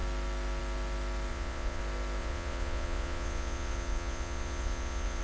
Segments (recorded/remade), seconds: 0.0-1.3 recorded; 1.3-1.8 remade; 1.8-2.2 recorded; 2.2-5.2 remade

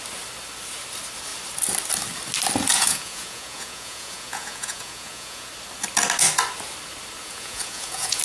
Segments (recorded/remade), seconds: 0.0-2.7 recorded; 2.7-5.5 remade; 5.5-7.2 recorded; 7.2-8.2 remade

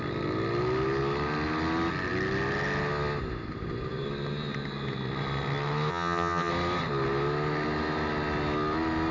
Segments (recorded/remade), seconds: 0.0-5.9 recorded; 5.9-6.5 remade; 6.5-9.1 recorded

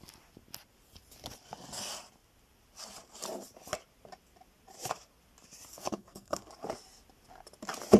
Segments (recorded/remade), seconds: 0.0-5.7 recorded; 5.7-6.5 remade; 6.5-8.0 recorded

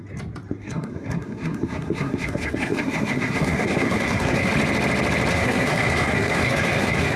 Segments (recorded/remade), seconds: 0.0-0.6 recorded; 0.6-4.5 remade; 4.5-5.3 recorded; 5.3-7.2 remade

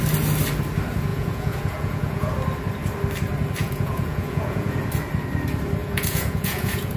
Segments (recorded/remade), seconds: 0.0-1.1 recorded; 1.1-2.3 remade; 2.3-3.6 recorded; 3.6-4.9 remade; 4.9-5.8 recorded; 5.8-7.0 remade

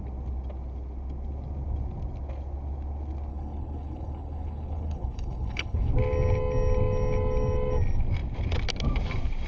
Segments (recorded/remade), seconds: 0.0-3.3 recorded; 3.3-5.9 remade; 5.9-9.5 recorded